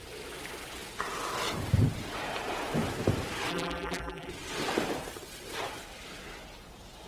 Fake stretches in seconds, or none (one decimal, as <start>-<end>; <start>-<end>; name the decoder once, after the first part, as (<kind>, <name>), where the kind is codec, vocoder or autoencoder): 3.5-4.3 (vocoder, BigVGAN v2)